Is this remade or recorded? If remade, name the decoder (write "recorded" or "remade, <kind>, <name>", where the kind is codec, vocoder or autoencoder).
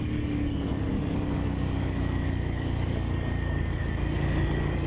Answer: remade, codec, DAC